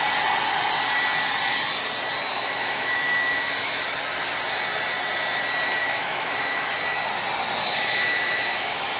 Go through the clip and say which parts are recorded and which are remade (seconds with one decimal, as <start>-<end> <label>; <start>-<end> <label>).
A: 0.0-2.3 recorded; 2.3-3.8 remade; 3.8-5.8 recorded; 5.8-6.7 remade; 6.7-7.6 recorded; 7.6-9.0 remade